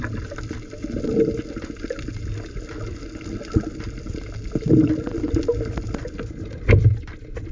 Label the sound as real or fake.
real